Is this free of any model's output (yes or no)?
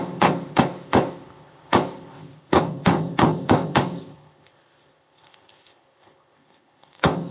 no